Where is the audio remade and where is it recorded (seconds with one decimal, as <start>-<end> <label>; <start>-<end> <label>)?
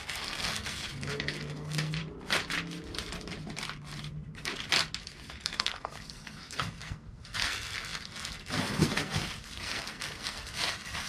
0.0-2.0 remade; 2.0-4.1 recorded; 4.1-4.5 remade; 4.5-5.0 recorded; 5.0-11.1 remade